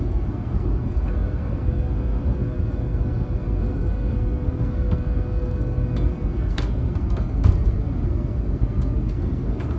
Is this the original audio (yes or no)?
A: no